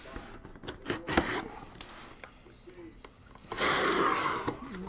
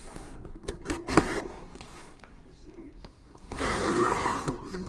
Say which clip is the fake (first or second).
second